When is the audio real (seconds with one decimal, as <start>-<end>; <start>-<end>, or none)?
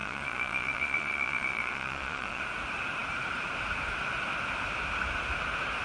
2.4-5.8